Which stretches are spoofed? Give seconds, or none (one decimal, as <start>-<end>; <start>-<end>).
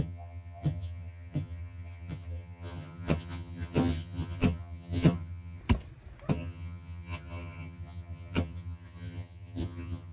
0.0-5.6; 6.3-10.1